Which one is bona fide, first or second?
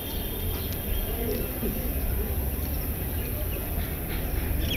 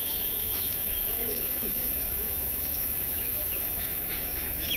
first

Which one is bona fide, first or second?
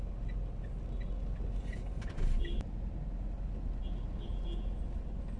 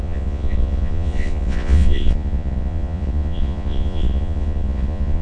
first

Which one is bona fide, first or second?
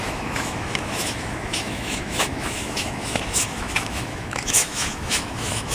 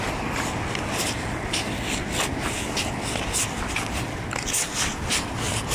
second